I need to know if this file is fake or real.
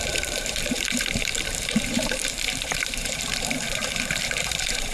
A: fake